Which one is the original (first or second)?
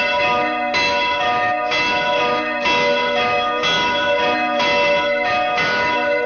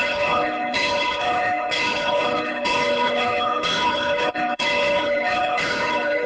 first